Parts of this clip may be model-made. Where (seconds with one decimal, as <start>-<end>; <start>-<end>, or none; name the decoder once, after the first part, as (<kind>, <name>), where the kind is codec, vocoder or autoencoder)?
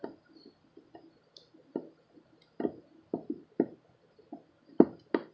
none